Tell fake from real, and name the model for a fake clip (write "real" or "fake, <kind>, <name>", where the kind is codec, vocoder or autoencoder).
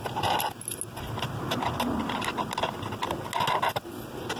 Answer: real